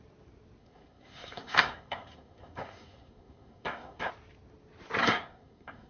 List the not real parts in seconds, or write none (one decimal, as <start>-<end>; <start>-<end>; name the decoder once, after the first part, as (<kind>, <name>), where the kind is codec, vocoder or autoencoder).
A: 0.6-4.1 (codec, SNAC); 5.0-5.9